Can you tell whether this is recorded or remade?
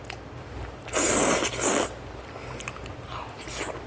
recorded